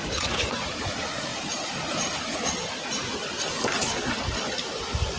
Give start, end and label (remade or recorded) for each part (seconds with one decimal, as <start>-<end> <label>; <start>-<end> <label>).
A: 0.0-0.7 remade; 0.7-5.2 recorded